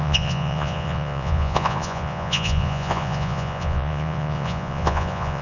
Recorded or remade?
remade